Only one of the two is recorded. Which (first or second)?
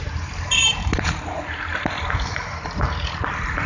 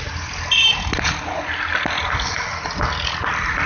second